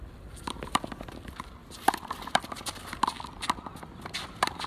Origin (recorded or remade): remade